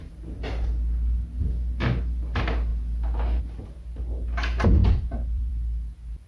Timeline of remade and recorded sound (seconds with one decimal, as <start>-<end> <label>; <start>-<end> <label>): 0.0-4.8 recorded; 4.8-5.5 remade; 5.5-6.3 recorded